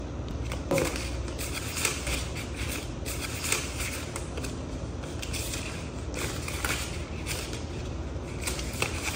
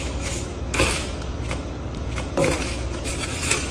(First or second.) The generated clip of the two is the second